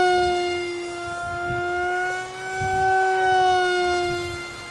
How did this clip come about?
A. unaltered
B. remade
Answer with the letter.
B